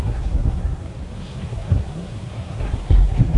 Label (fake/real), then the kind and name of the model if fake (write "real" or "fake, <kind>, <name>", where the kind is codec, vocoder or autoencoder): fake, codec, SNAC